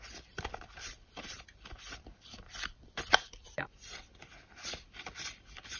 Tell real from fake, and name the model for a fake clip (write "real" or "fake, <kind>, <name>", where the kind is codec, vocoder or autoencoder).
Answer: fake, vocoder, BigVGAN v2